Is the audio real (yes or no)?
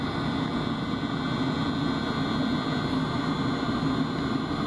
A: yes